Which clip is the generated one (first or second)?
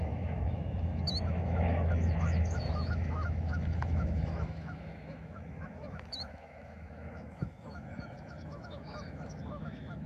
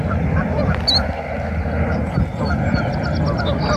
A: first